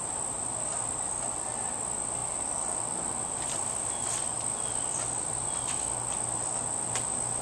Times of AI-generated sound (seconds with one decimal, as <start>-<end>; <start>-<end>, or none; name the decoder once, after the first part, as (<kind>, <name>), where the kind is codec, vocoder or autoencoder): none